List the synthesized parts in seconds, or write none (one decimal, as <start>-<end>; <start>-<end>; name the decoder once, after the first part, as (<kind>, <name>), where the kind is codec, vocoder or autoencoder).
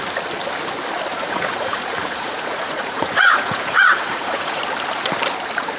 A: 1.1-4.6 (vocoder, Vocos)